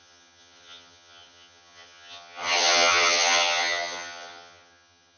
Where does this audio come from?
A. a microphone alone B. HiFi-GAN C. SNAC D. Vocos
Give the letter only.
B